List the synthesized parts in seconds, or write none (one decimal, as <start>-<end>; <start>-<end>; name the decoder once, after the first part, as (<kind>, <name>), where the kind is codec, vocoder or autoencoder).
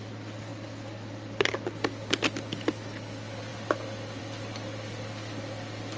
none